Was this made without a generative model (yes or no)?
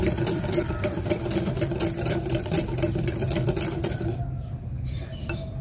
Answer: yes